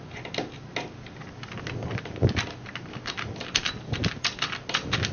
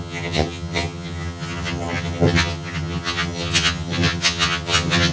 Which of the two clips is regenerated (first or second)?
second